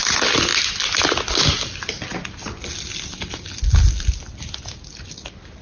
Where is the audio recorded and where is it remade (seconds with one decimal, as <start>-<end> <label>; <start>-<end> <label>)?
0.0-5.6 recorded